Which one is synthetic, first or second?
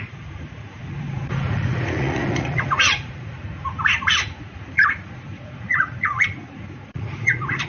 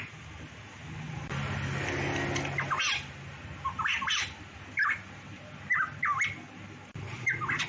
first